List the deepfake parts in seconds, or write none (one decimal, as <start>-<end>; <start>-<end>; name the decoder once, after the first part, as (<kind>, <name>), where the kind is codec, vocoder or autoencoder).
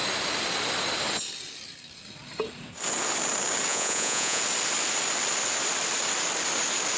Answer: 3.7-4.4 (vocoder, Vocos)